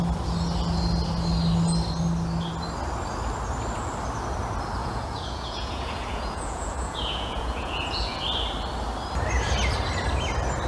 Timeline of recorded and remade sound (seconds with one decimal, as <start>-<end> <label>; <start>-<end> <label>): 0.0-4.8 recorded; 4.8-8.2 remade; 8.2-10.7 recorded